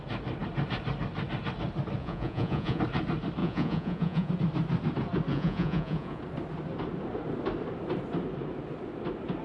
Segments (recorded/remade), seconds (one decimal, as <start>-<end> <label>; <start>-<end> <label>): 0.0-2.0 recorded; 2.0-2.8 remade; 2.8-3.4 recorded; 3.4-4.3 remade; 4.3-5.3 recorded; 5.3-6.2 remade; 6.2-9.4 recorded